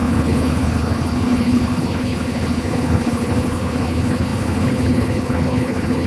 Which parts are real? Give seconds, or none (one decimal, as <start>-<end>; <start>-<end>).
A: none